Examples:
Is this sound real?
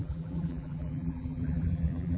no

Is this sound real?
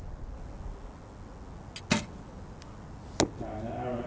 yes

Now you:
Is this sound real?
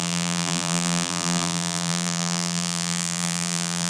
no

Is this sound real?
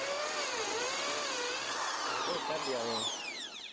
no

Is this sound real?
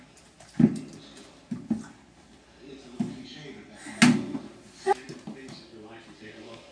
yes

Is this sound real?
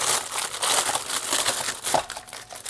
yes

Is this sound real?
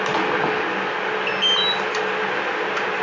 yes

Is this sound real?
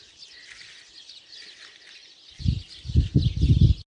yes